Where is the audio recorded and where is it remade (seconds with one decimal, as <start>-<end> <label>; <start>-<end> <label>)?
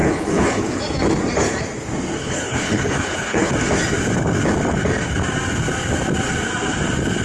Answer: 0.0-0.8 remade; 0.8-2.2 recorded; 2.2-3.5 remade; 3.5-7.2 recorded